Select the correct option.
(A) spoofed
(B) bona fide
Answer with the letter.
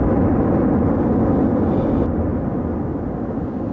B